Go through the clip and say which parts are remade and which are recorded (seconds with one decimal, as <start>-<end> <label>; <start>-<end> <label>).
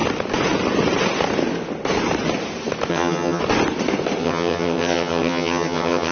0.0-2.9 recorded; 2.9-3.4 remade; 3.4-4.2 recorded; 4.2-6.1 remade